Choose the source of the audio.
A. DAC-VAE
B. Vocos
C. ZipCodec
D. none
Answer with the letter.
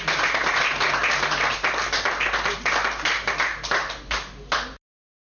D